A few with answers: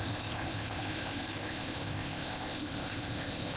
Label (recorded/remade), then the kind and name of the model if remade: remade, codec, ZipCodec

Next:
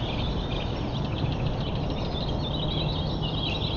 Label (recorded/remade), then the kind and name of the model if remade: recorded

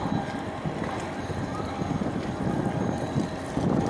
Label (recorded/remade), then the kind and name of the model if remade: recorded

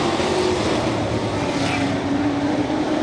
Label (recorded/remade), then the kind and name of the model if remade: recorded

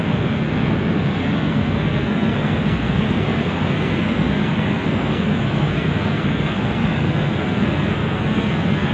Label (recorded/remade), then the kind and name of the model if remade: remade, codec, SNAC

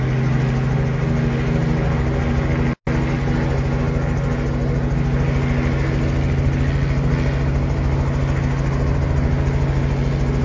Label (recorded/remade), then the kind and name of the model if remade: recorded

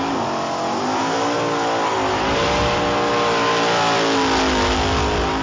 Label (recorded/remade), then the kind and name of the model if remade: recorded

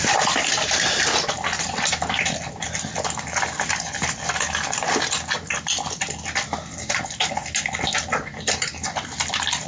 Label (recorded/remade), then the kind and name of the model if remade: recorded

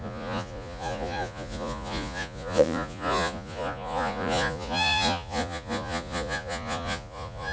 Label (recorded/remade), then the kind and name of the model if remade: remade, vocoder, Vocos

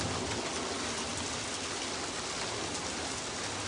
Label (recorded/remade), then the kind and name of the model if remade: recorded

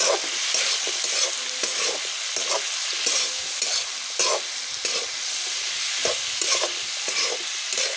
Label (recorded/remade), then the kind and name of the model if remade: recorded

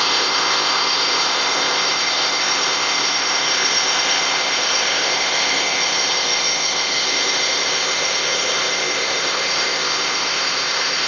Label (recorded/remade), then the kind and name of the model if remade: remade, codec, ZipCodec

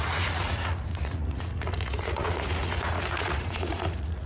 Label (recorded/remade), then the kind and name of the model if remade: remade, vocoder, Vocos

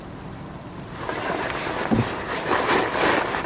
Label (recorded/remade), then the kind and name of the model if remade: recorded